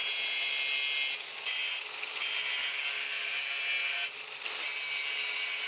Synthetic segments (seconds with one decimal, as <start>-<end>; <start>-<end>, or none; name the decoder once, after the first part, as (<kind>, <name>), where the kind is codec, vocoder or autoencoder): 0.0-0.5 (vocoder, Vocos)